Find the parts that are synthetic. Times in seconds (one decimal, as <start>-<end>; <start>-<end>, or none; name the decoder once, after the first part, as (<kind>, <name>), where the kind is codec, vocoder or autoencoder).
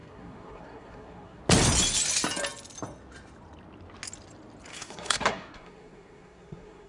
0.0-1.4 (codec, SNAC); 4.7-6.9